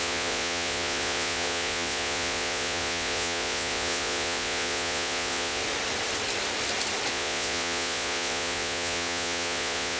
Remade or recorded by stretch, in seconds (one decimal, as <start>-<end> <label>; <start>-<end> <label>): 0.0-5.6 remade; 5.6-7.1 recorded; 7.1-10.0 remade